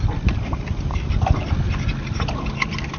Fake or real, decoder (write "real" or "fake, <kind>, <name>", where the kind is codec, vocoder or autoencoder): real